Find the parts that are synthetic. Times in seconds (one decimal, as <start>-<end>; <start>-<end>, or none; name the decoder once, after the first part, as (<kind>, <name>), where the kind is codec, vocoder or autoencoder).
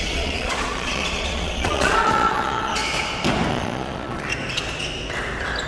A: 0.0-2.8 (vocoder, Vocos); 3.5-4.3